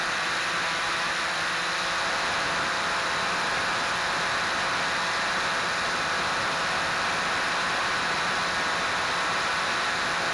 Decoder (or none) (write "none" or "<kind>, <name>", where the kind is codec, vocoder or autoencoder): none